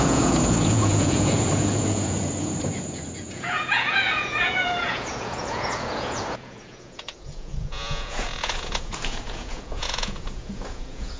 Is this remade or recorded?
remade